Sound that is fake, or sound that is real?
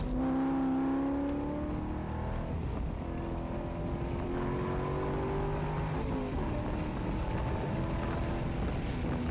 real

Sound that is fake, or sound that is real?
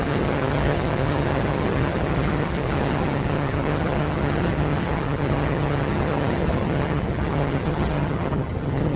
fake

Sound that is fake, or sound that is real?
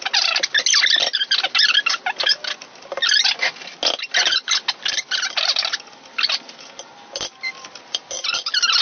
real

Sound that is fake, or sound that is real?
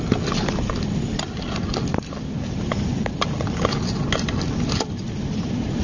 real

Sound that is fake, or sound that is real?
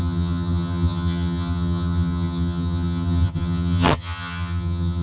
fake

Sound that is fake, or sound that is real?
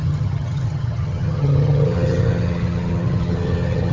fake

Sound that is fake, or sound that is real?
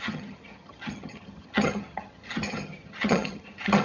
fake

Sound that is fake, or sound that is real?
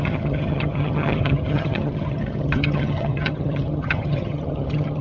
fake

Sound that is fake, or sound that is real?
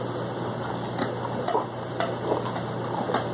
real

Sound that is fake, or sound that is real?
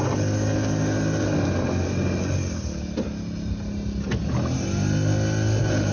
real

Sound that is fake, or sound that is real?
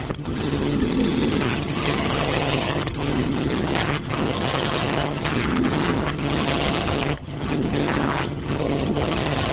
fake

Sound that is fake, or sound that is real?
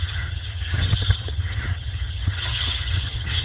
fake